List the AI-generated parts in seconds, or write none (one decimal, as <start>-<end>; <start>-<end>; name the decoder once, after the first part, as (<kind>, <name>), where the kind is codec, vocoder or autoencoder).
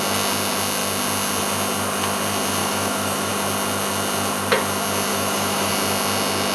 2.6-3.3 (autoencoder, DAC-VAE); 5.1-5.7